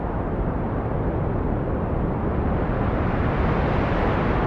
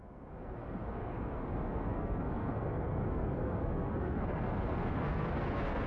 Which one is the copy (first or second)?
second